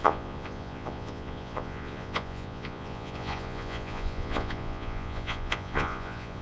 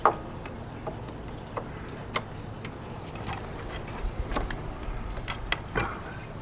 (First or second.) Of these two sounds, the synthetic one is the first